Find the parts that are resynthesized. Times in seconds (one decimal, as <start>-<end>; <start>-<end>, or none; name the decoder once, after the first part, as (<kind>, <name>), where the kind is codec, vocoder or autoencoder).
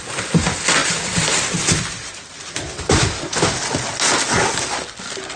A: none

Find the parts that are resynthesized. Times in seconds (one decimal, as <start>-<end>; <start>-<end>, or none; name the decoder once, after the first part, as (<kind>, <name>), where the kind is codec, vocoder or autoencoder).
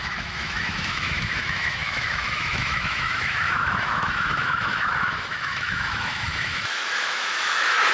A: 0.0-7.9 (autoencoder, DAC-VAE)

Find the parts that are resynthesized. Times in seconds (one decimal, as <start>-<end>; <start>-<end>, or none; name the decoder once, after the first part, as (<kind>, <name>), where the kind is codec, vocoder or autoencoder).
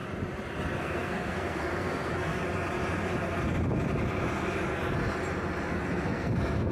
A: 0.8-2.3 (codec, SNAC); 5.7-6.7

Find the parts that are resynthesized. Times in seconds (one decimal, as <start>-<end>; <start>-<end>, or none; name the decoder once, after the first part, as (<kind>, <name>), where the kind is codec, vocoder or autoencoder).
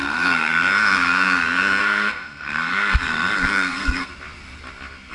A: 0.0-4.1 (codec, SNAC)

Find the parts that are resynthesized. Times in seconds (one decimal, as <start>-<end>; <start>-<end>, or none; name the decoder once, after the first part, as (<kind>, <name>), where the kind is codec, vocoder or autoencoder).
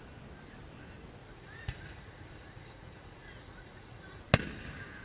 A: 1.2-4.2 (vocoder, Vocos)